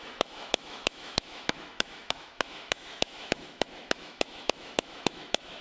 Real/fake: fake